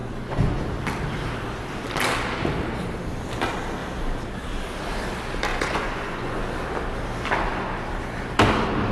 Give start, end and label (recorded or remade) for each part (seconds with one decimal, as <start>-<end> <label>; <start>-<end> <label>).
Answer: 0.0-0.7 remade; 0.7-5.5 recorded; 5.5-6.4 remade; 6.4-8.9 recorded